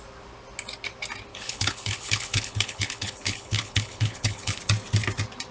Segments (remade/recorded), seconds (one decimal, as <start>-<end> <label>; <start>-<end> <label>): 0.0-1.3 recorded; 1.3-4.6 remade; 4.6-5.5 recorded